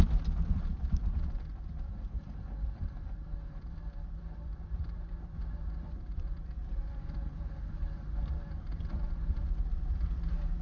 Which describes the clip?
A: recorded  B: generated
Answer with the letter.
B